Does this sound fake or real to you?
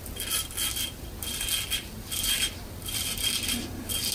real